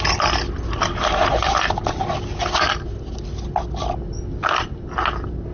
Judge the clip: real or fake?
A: real